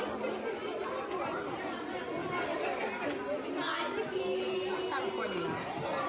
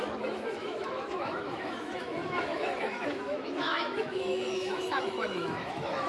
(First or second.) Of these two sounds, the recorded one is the first